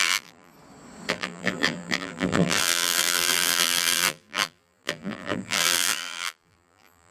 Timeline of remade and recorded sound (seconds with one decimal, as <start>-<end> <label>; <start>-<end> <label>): 0.0-0.5 remade; 0.5-1.1 recorded; 1.1-7.1 remade